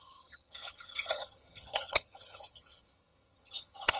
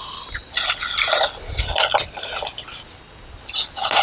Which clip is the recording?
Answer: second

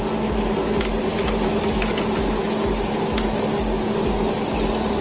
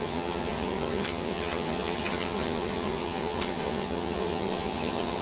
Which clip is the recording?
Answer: first